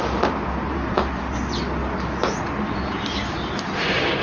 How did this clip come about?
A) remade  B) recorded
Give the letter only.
B